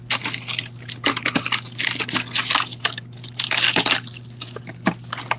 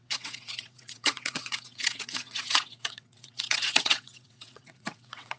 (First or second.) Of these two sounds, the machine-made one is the second